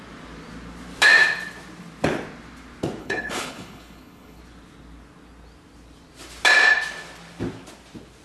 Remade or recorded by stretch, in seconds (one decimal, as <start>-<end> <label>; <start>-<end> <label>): 0.0-3.0 recorded; 3.0-4.4 remade; 4.4-8.2 recorded

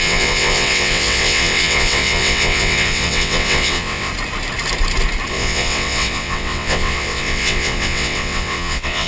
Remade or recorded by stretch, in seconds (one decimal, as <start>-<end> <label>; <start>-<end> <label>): 0.0-4.1 remade; 4.1-5.3 recorded; 5.3-9.1 remade

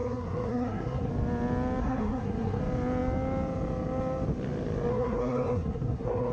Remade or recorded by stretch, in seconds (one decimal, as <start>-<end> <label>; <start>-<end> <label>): 0.0-1.1 remade; 1.1-1.8 recorded; 1.8-2.6 remade; 2.6-4.9 recorded; 4.9-6.3 remade